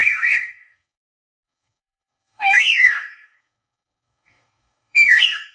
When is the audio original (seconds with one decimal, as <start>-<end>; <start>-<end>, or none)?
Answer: none